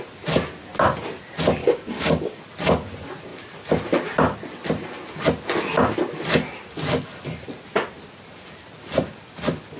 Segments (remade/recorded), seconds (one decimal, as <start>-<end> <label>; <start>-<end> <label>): 0.0-1.6 recorded; 1.6-2.4 remade; 2.4-9.8 recorded